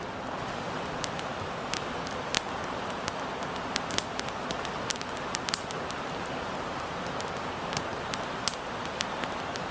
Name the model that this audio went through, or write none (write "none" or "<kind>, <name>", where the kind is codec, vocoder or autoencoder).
none